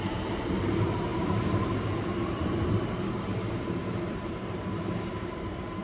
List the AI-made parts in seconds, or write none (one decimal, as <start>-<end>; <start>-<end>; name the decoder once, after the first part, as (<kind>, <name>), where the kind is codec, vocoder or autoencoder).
0.0-5.8 (vocoder, BigVGAN v2)